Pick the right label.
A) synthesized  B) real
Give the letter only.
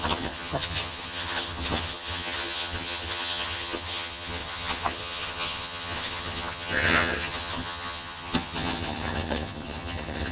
A